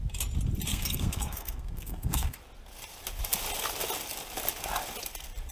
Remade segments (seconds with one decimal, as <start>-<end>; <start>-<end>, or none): 0.7-2.4